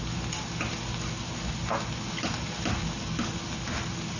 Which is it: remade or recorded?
recorded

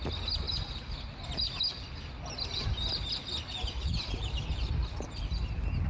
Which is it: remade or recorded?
recorded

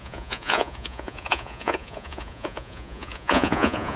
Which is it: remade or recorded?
remade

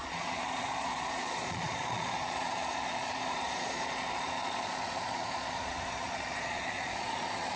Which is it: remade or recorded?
remade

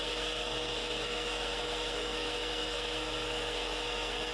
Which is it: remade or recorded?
remade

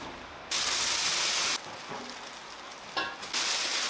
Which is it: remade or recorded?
recorded